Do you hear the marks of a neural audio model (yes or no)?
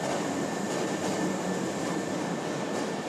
no